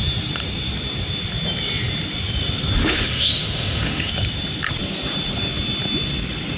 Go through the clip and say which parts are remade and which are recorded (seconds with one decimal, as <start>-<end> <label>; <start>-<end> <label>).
0.0-2.8 recorded; 2.8-4.1 remade; 4.1-6.6 recorded